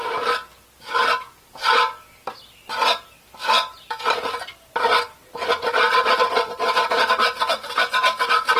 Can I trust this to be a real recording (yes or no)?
no